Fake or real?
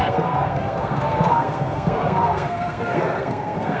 fake